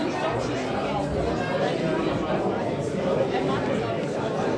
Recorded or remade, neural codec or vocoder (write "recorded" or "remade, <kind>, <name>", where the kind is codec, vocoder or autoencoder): recorded